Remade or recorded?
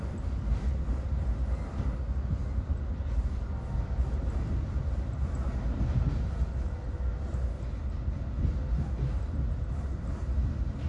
recorded